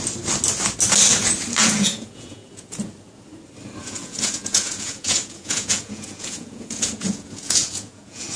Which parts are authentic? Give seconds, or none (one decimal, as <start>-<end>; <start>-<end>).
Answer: 0.0-1.6; 2.8-3.8